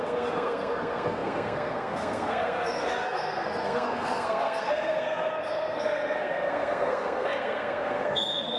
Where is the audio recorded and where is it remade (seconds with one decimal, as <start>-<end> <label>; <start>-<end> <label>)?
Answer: 0.0-8.6 remade